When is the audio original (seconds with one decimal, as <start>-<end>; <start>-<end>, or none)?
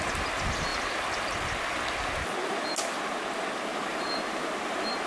0.0-3.7